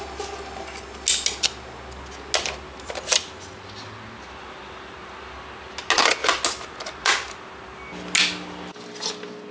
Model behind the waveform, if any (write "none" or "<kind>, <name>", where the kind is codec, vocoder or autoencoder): none